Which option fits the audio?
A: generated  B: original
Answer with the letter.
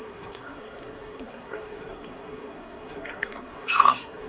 A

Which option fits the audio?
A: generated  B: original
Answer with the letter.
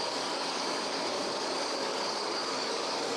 A